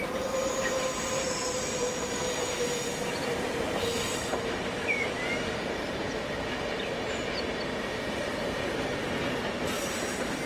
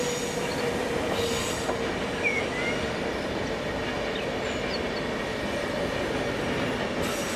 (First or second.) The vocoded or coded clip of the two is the first